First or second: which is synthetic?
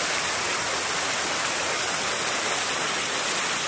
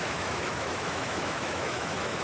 second